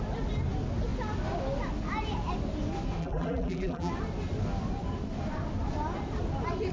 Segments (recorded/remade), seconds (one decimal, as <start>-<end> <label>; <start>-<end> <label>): 0.0-3.0 recorded; 3.0-3.9 remade; 3.9-6.7 recorded